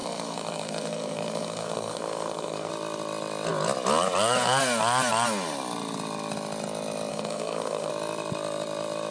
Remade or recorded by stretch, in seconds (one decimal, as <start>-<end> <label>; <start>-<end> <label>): 0.0-2.7 remade; 2.7-7.1 recorded; 7.1-7.9 remade; 7.9-9.1 recorded